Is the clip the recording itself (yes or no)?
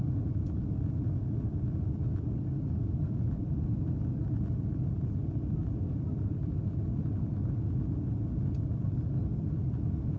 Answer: yes